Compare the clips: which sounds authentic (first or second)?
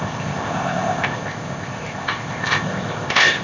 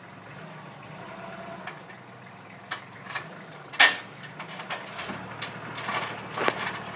second